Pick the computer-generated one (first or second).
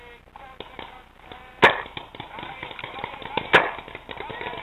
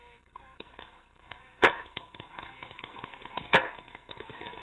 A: second